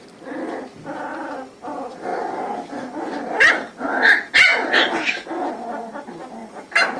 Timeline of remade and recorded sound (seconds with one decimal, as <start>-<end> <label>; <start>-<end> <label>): 0.0-1.1 recorded; 1.1-1.7 remade; 1.7-4.5 recorded; 4.5-5.9 remade; 5.9-6.4 recorded; 6.4-7.0 remade